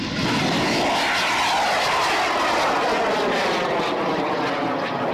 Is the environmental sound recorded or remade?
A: recorded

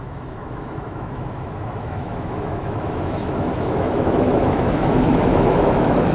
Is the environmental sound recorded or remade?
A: remade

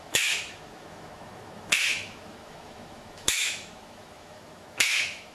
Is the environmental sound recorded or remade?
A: remade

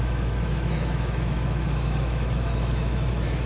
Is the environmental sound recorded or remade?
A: remade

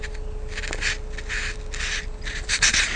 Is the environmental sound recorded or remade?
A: recorded